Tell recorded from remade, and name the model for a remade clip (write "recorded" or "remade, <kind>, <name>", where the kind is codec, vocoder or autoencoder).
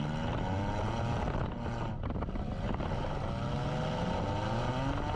recorded